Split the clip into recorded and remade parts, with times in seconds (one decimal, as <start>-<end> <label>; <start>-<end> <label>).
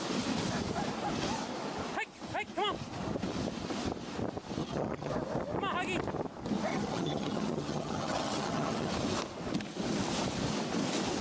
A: 0.0-4.6 recorded; 4.6-5.1 remade; 5.1-6.7 recorded; 6.7-8.9 remade; 8.9-11.2 recorded